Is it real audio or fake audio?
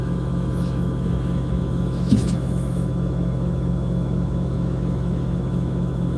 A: fake